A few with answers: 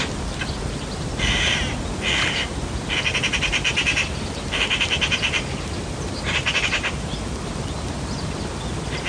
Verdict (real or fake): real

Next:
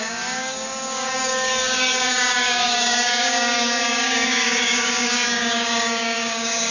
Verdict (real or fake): fake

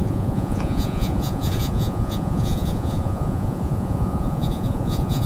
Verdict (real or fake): fake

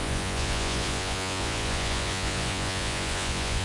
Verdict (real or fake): fake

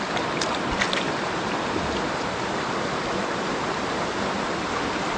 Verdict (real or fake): real